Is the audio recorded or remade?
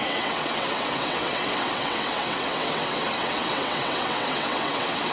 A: remade